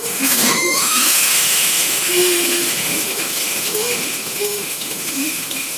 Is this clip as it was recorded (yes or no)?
no